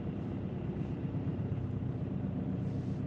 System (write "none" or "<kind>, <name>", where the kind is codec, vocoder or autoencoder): vocoder, BigVGAN v2